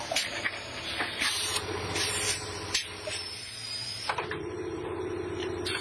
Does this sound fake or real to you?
fake